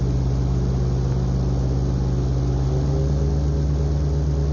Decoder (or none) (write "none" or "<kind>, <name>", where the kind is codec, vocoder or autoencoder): none